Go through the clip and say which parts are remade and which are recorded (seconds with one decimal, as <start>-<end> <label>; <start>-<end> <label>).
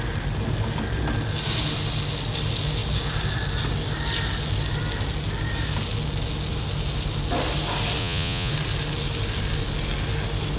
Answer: 0.0-8.0 recorded; 8.0-8.5 remade; 8.5-10.6 recorded